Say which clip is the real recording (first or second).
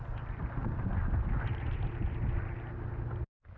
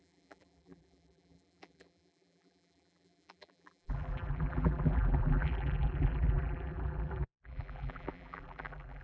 first